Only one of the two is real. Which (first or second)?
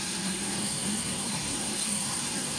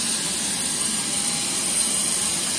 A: second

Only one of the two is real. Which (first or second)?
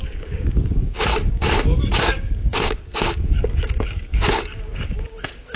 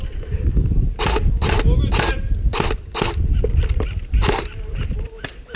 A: second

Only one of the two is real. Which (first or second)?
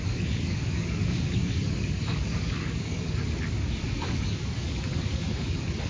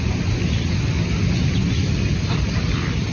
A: second